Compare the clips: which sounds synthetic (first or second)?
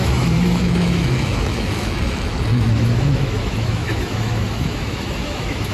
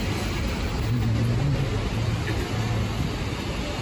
first